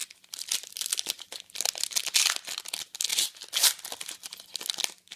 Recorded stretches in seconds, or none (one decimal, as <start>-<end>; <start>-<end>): 1.4-5.2